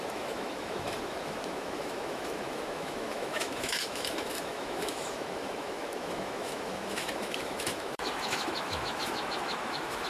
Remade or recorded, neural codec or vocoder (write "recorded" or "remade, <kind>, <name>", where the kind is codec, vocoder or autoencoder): remade, autoencoder, DAC-VAE